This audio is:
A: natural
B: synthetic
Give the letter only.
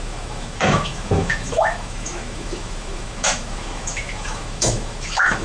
B